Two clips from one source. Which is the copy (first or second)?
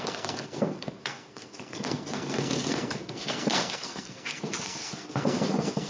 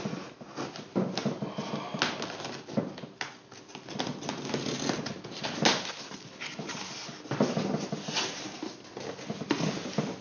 first